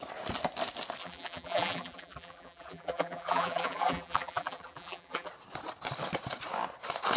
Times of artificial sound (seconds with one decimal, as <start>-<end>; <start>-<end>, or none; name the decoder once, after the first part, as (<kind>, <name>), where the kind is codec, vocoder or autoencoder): 1.0-5.3 (vocoder, BigVGAN v2)